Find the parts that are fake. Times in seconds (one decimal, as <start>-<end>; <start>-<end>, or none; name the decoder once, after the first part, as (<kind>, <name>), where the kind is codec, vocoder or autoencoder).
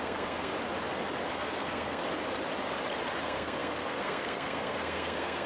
0.0-0.5 (codec, SNAC); 1.3-2.0; 3.2-5.5